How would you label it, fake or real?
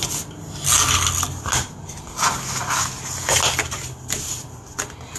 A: real